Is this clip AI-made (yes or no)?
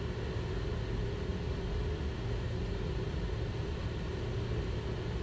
no